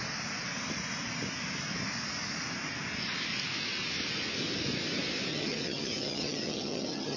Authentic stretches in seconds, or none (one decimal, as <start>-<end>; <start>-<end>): 0.0-5.3